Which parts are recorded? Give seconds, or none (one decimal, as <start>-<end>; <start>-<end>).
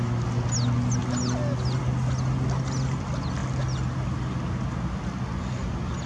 0.0-6.1